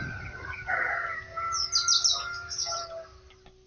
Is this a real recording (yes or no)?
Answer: yes